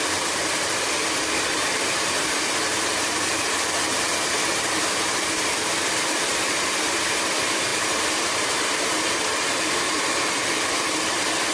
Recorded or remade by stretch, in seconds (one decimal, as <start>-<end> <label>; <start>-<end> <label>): 0.0-11.5 recorded